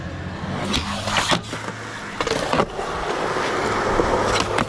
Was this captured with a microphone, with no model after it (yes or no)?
yes